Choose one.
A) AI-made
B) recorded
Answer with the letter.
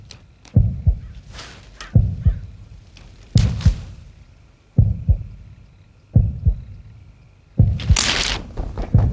B